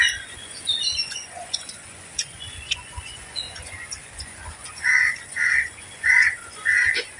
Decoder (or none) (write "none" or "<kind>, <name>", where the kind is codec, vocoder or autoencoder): vocoder, Vocos